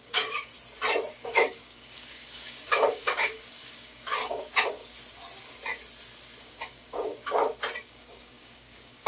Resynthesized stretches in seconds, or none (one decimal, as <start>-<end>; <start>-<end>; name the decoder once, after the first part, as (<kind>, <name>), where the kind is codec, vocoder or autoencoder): 0.0-0.5 (codec, DAC); 1.1-4.8; 6.4-7.4; 7.9-9.1